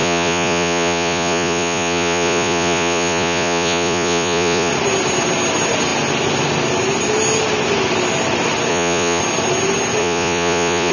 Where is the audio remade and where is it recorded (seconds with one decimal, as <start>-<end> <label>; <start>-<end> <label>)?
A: 0.0-4.7 remade; 4.7-8.7 recorded; 8.7-9.2 remade; 9.2-10.0 recorded; 10.0-10.9 remade